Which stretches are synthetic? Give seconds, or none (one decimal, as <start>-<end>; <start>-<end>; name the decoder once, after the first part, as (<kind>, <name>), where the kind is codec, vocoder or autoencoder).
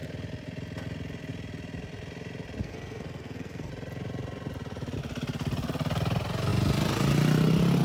2.6-3.7 (codec, SNAC)